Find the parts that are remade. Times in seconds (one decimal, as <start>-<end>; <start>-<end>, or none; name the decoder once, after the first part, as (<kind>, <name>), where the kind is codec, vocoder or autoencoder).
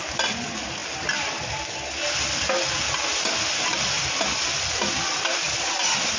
none